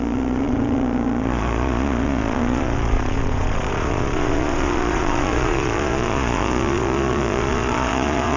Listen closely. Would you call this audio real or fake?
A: fake